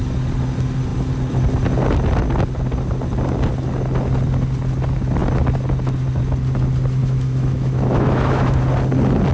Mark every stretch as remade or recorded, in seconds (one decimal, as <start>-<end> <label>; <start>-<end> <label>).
0.0-7.0 recorded; 7.0-8.6 remade; 8.6-9.3 recorded